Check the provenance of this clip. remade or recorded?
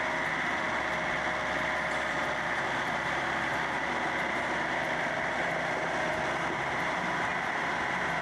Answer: recorded